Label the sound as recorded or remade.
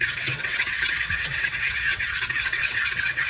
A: remade